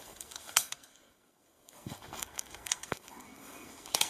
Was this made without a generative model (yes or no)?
no